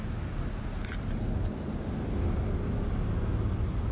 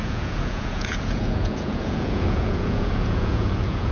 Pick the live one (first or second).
first